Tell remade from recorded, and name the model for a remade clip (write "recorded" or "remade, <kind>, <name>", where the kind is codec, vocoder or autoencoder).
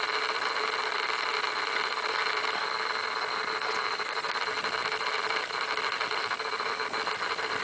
recorded